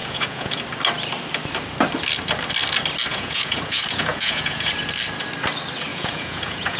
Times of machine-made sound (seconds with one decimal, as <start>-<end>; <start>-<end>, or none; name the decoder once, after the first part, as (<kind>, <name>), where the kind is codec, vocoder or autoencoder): 0.0-0.6 (vocoder, Vocos); 3.1-4.7; 5.9-6.8